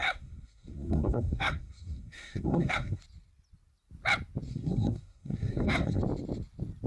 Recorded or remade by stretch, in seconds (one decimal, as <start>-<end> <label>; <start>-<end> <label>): 0.0-3.0 remade; 3.0-4.5 recorded; 4.5-6.0 remade; 6.0-6.9 recorded